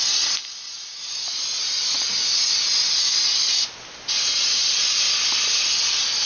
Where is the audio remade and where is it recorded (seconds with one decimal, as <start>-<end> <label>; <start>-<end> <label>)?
0.0-6.3 recorded